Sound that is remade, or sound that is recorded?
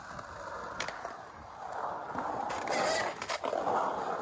recorded